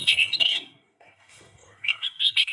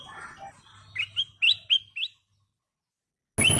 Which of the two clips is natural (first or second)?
second